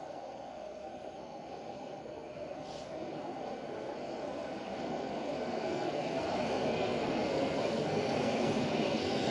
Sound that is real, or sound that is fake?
fake